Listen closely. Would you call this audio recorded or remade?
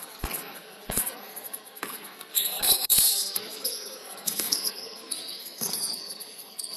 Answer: remade